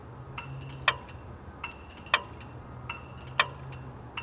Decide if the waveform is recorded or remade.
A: recorded